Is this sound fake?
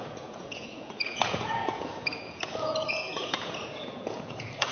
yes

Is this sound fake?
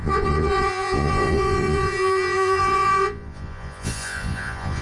yes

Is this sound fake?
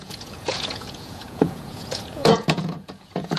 yes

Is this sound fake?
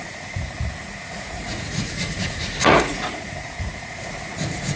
yes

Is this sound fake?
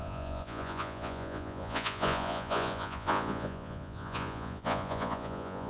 yes